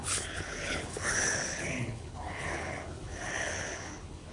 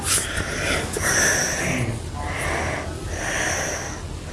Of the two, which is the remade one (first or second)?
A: first